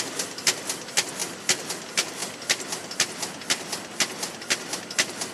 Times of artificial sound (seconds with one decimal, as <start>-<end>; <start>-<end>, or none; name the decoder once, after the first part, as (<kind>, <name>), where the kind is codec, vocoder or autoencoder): none